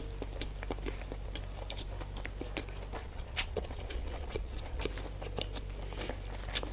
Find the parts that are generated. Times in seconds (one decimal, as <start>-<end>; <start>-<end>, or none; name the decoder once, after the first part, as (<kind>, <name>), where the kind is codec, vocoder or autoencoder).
3.0-4.8 (vocoder, Vocos)